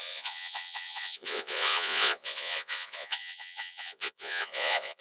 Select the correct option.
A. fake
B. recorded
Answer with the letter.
A